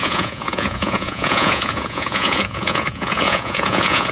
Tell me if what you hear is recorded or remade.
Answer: remade